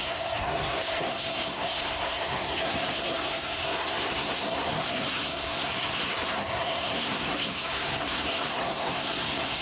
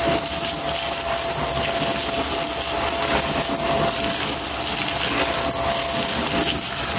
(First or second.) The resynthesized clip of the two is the first